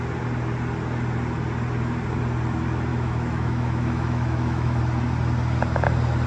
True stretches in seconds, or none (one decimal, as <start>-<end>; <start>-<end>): 0.0-2.9; 4.8-6.3